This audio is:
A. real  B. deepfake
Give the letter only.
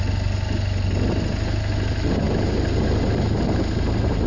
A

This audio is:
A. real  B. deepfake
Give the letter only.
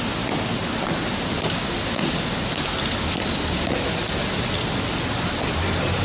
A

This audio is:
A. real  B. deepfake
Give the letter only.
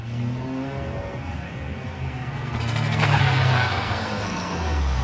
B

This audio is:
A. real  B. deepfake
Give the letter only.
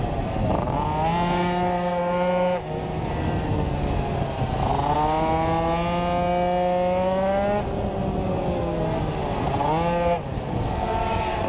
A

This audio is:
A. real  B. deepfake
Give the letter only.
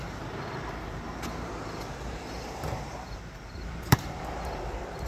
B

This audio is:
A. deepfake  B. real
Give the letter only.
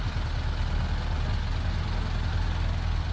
B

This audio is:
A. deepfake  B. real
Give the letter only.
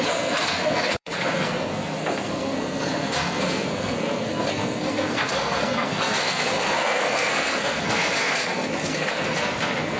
A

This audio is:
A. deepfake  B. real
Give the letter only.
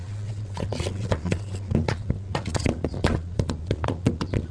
A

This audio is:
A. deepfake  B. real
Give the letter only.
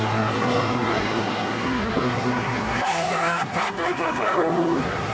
A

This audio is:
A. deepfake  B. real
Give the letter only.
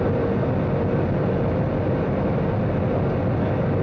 B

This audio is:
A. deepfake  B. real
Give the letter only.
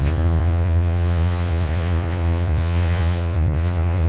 A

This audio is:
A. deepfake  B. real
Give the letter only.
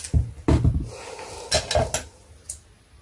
B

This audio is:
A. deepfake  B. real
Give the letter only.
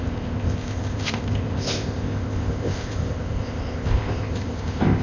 A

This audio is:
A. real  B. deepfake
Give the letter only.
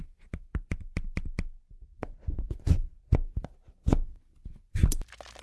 A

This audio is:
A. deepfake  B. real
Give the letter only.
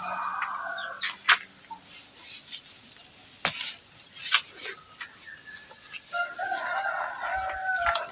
B